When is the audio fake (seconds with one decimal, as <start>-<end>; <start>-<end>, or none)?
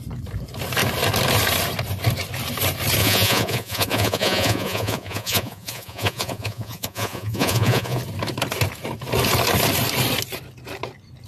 3.0-8.0